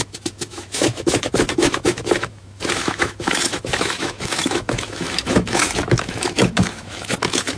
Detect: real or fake fake